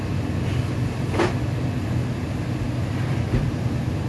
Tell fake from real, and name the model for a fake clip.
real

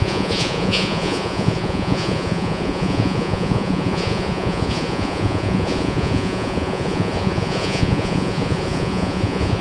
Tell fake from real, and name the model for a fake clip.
fake, vocoder, Vocos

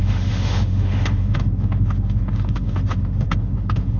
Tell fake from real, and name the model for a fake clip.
fake, autoencoder, DAC-VAE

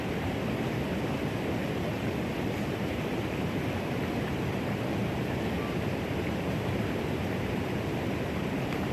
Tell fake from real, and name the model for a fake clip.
fake, vocoder, BigVGAN v2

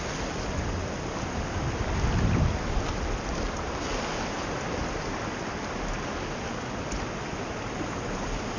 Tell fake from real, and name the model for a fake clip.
real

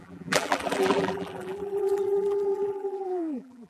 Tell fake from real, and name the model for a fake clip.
fake, vocoder, BigVGAN v2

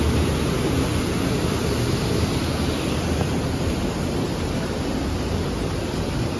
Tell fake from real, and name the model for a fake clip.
real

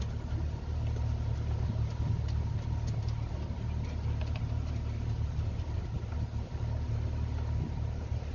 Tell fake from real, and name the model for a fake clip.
real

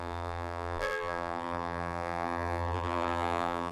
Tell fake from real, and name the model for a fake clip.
fake, vocoder, BigVGAN v2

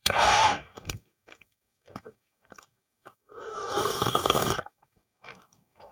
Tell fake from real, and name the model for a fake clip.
fake, codec, DAC